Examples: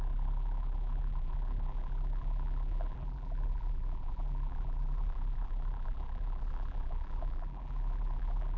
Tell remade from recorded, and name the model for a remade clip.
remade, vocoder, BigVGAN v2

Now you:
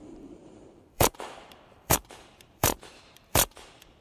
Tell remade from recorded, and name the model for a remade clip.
remade, vocoder, BigVGAN v2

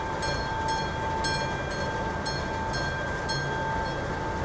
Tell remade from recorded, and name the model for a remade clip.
recorded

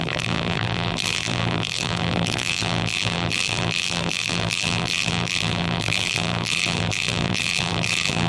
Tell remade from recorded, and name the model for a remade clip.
remade, vocoder, BigVGAN v2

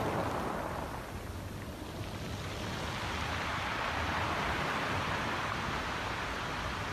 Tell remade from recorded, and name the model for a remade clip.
recorded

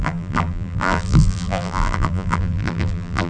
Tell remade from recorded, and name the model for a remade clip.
remade, vocoder, BigVGAN v2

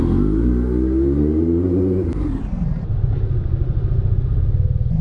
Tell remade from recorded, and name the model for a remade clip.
recorded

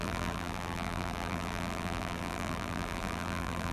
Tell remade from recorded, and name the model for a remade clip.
remade, vocoder, BigVGAN v2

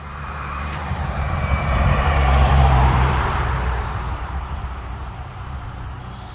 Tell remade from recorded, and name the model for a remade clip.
remade, vocoder, BigVGAN v2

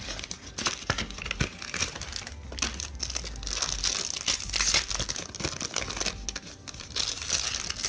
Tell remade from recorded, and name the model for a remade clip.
recorded